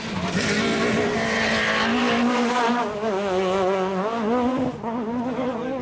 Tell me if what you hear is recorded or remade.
recorded